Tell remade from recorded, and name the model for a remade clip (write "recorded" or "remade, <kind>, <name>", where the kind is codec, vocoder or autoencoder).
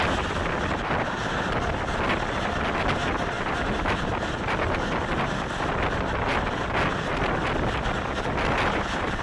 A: recorded